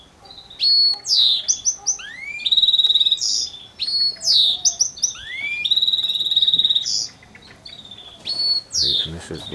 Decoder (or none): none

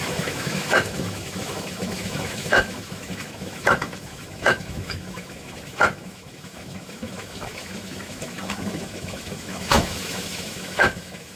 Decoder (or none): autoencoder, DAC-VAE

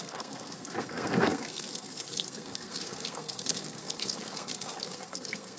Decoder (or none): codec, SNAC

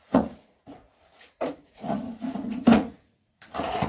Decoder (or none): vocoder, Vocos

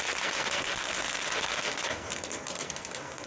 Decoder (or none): codec, SNAC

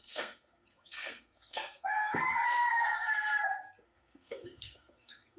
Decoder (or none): codec, SNAC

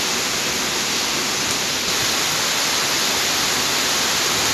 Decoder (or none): none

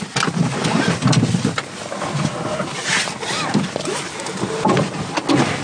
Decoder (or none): none